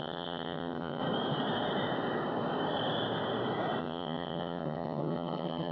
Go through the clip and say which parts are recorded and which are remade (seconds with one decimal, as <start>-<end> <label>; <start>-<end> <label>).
0.0-1.0 remade; 1.0-3.8 recorded; 3.8-5.7 remade